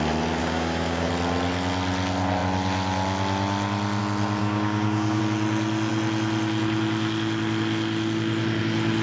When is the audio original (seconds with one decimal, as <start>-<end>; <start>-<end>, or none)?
0.0-0.4; 1.1-4.4; 5.2-9.0